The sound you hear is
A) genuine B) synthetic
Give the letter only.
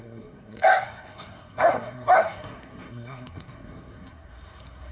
B